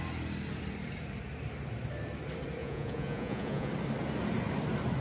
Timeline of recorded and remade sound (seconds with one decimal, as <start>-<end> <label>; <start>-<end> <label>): 0.0-2.6 recorded; 2.6-3.7 remade; 3.7-5.0 recorded